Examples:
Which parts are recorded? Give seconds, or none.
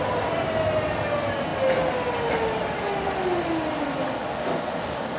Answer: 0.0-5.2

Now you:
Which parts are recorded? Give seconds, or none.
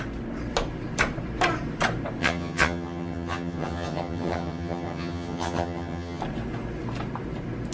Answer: 0.0-2.2; 6.2-7.7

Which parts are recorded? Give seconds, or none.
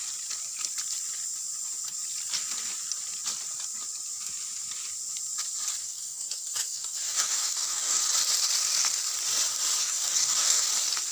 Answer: 0.0-5.8; 8.0-9.8; 10.7-11.1